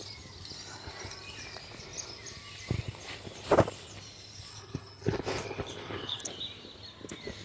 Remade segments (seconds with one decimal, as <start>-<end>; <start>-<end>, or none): 4.5-6.2